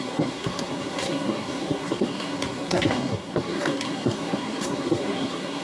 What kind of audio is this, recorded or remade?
remade